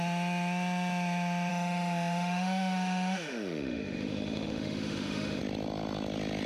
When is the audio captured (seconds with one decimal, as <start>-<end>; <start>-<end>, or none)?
0.0-1.5; 5.4-6.5